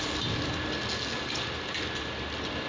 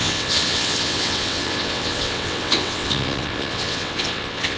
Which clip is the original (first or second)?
first